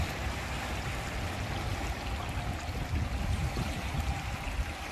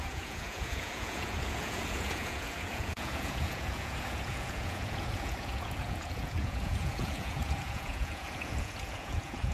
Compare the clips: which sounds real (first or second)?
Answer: first